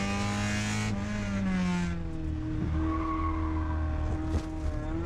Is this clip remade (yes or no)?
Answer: no